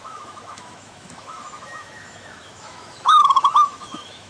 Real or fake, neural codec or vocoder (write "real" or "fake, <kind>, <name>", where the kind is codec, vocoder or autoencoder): fake, autoencoder, DAC-VAE